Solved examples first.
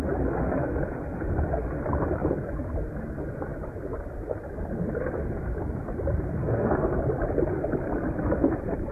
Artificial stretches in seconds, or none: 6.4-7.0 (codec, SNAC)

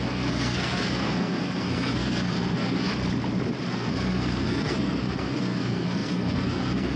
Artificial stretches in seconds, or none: 0.0-2.9 (codec, SNAC); 3.7-7.0